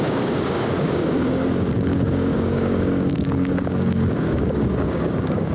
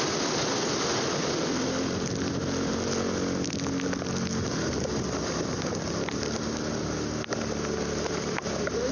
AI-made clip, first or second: first